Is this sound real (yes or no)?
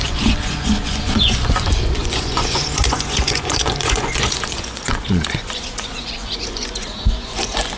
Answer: no